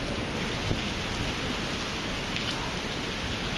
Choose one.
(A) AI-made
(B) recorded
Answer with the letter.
B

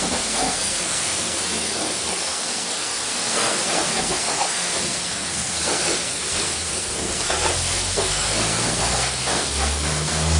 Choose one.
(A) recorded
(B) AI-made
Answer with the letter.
B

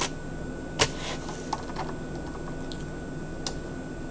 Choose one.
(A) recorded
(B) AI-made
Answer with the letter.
A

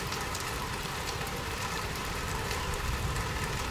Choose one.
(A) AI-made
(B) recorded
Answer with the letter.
A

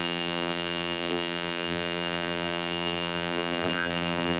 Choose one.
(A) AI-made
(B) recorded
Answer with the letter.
A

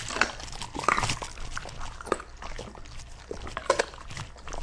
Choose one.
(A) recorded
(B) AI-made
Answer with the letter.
A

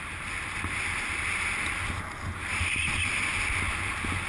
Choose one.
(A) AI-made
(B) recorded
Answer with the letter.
B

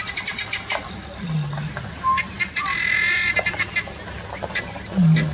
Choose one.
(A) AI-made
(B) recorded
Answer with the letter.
B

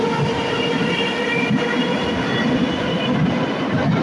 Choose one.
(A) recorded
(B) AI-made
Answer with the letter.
A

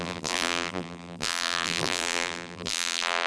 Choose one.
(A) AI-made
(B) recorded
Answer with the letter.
A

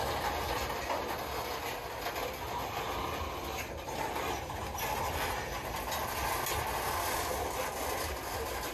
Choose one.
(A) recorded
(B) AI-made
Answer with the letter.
A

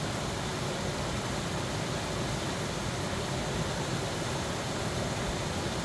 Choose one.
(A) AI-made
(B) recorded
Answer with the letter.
B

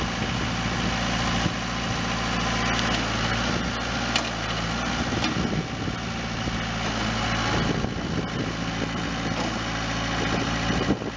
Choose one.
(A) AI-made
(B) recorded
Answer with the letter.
B